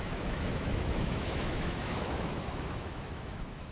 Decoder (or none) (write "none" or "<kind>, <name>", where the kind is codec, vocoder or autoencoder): autoencoder, DAC-VAE